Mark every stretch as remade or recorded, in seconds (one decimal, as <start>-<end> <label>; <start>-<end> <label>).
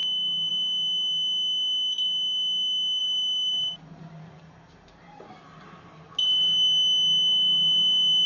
0.0-3.0 recorded; 3.0-5.3 remade; 5.3-8.3 recorded